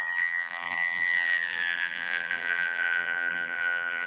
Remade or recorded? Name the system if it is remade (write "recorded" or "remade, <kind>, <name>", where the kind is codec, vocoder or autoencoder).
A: remade, vocoder, BigVGAN v2